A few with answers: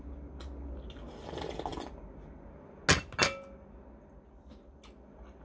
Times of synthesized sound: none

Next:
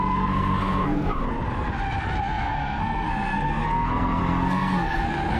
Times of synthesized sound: 0.0-1.2 (codec, SNAC); 2.2-5.4